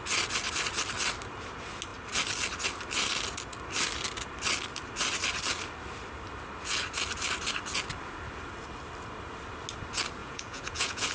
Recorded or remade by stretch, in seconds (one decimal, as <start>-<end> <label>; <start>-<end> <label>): 0.0-10.2 recorded; 10.2-11.1 remade